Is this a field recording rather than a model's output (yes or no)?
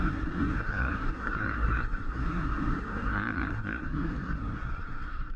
no